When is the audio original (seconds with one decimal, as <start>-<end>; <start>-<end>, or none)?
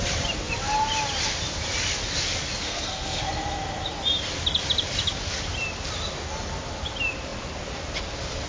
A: 0.0-2.6; 3.2-8.5